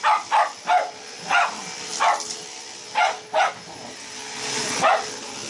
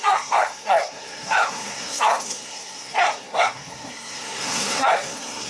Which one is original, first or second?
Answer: first